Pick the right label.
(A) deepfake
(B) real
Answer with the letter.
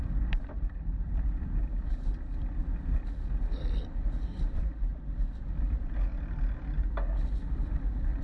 B